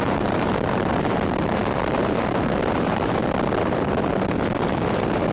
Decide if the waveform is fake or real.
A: fake